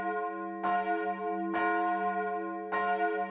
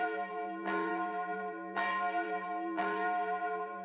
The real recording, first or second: first